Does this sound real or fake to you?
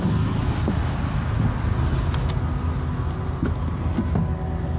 real